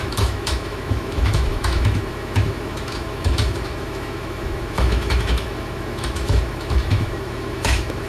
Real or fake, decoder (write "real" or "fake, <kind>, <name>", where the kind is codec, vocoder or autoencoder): fake, autoencoder, DAC-VAE